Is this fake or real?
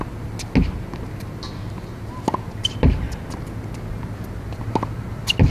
real